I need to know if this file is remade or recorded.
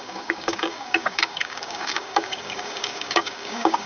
remade